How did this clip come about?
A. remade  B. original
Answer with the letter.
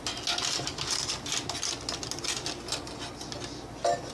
B